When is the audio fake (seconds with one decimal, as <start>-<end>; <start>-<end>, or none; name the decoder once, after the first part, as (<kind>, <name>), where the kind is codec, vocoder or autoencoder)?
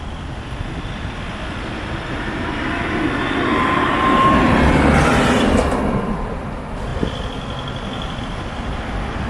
none